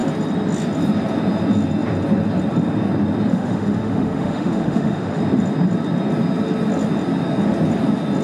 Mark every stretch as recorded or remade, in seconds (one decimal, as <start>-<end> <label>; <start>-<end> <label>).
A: 0.0-3.3 recorded; 3.3-5.2 remade; 5.2-8.2 recorded